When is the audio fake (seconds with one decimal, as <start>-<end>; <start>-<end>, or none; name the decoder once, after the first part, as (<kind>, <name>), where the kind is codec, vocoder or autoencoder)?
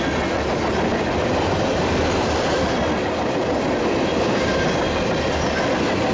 none